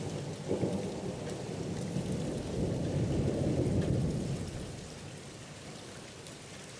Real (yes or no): yes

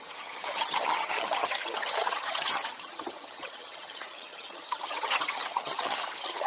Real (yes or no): no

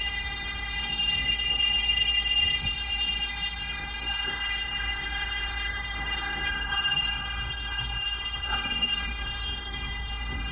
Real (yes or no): no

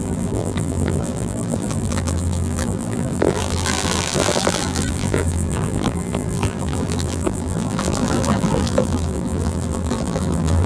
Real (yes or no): no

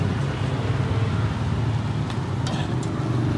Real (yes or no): yes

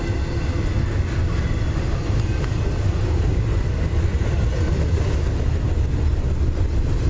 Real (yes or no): yes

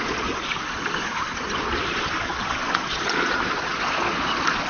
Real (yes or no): no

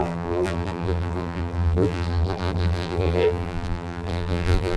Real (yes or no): no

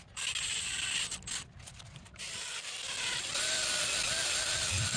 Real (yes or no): yes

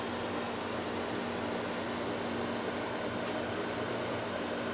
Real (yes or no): yes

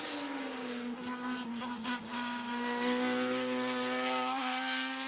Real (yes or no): no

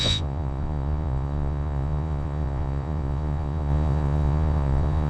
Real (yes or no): no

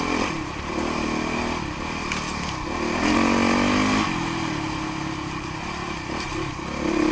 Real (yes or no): yes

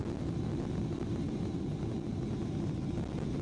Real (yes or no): yes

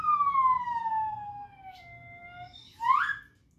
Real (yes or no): yes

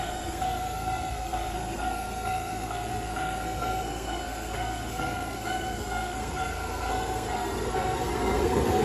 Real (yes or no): no